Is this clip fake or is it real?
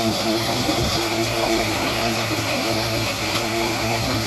fake